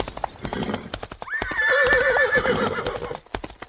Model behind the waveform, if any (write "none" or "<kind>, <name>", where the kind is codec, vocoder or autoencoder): none